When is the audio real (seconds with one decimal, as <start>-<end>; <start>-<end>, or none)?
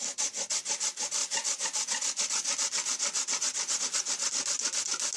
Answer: 0.0-5.2